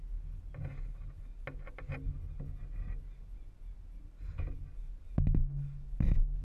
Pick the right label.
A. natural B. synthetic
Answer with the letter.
A